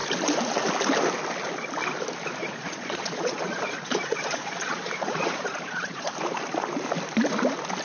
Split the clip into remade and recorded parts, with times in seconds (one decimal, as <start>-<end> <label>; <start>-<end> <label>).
0.0-2.4 recorded; 2.4-6.1 remade; 6.1-7.8 recorded

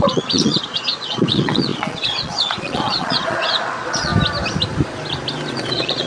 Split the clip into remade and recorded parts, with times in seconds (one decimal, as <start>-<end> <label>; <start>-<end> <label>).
0.0-4.1 remade; 4.1-5.5 recorded; 5.5-6.1 remade

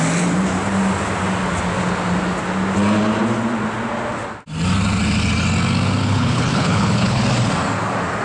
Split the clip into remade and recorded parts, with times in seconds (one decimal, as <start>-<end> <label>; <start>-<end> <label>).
0.0-6.0 recorded; 6.0-7.2 remade; 7.2-8.2 recorded

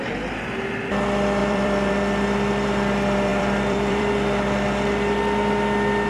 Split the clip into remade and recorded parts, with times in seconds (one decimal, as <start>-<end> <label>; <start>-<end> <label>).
0.0-1.4 recorded; 1.4-1.9 remade; 1.9-3.3 recorded; 3.3-4.1 remade; 4.1-6.1 recorded

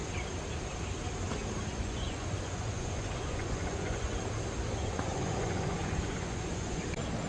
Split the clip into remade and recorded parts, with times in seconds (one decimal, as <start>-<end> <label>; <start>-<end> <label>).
0.0-1.7 recorded; 1.7-4.2 remade; 4.2-4.8 recorded; 4.8-6.8 remade; 6.8-7.3 recorded

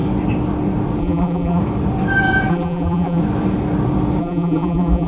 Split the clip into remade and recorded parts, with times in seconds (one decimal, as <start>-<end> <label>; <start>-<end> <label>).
0.0-1.0 recorded; 1.0-1.6 remade; 1.6-2.5 recorded; 2.5-3.2 remade; 3.2-4.2 recorded; 4.2-5.1 remade

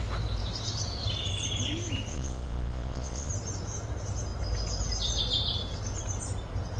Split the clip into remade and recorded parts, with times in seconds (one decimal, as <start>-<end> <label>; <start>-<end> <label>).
0.0-2.1 recorded; 2.1-3.3 remade; 3.3-6.8 recorded